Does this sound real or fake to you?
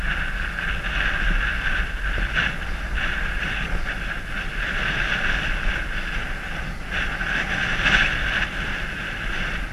real